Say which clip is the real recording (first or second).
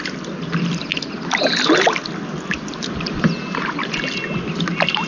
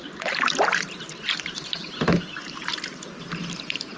first